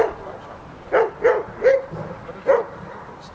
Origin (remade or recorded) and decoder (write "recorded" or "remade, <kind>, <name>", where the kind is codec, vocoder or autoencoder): recorded